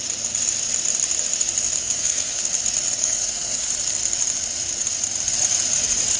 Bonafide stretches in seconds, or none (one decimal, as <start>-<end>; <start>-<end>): 0.0-1.8; 2.4-3.0; 3.7-6.2